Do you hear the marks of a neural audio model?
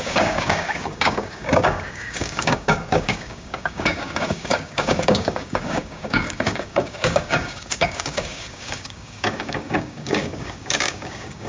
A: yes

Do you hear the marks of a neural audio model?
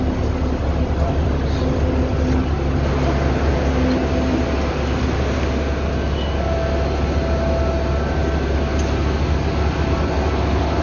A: no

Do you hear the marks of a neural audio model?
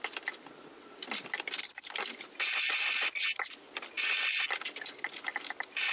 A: no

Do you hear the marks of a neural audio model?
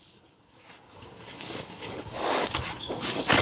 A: yes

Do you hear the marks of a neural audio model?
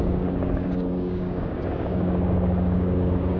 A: yes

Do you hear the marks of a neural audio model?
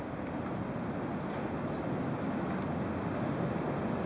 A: no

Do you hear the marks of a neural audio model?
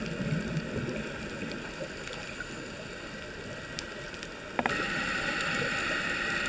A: no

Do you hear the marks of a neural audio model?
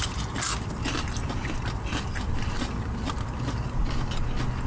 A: no